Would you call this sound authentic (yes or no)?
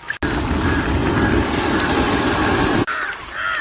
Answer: yes